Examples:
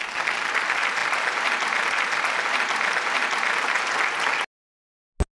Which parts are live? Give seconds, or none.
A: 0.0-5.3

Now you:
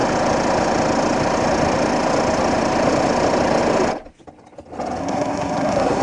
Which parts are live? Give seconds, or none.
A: 0.0-5.0

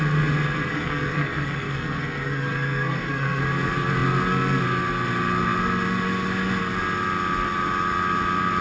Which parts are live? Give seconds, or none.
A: 0.0-0.7; 3.4-8.6